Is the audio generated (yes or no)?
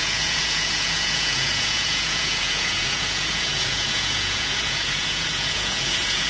yes